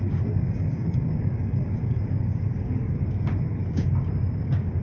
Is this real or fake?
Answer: fake